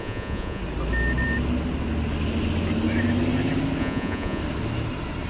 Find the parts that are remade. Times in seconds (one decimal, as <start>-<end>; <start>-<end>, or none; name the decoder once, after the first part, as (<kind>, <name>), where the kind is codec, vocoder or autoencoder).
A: 0.0-0.6 (vocoder, Vocos); 3.8-4.4